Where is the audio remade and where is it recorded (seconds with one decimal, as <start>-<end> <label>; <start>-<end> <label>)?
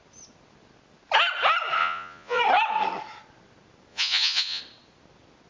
0.0-1.8 recorded; 1.8-2.4 remade; 2.4-3.9 recorded; 3.9-4.6 remade; 4.6-5.5 recorded